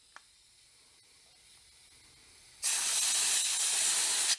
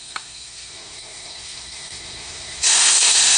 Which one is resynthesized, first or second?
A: second